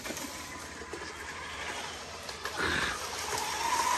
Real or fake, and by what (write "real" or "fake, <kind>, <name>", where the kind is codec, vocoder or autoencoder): real